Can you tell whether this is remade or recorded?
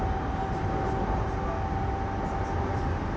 recorded